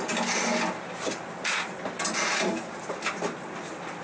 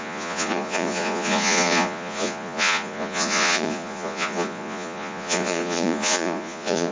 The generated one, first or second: second